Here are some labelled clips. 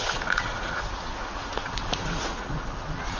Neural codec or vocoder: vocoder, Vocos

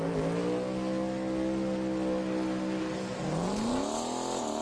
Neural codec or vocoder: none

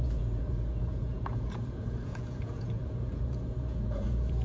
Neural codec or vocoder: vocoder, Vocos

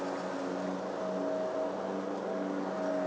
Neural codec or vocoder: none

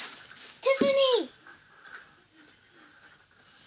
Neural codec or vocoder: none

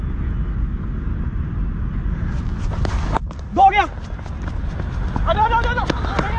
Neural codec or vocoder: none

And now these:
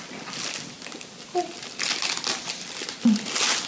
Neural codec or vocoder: none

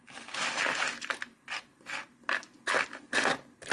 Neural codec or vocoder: none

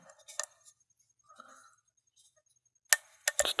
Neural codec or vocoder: none